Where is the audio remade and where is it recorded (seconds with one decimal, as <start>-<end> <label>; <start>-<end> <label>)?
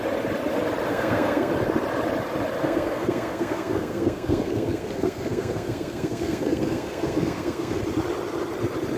0.0-0.9 recorded; 0.9-1.5 remade; 1.5-2.6 recorded; 2.6-7.8 remade; 7.8-9.0 recorded